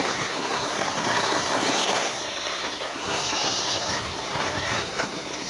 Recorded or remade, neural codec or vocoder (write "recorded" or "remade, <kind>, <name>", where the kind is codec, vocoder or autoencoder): remade, codec, SNAC